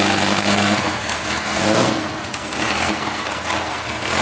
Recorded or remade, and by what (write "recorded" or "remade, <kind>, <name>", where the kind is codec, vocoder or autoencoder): remade, codec, SNAC